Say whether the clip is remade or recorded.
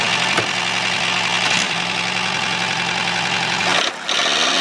recorded